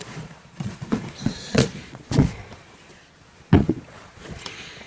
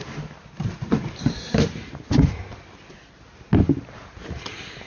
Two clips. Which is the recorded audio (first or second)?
second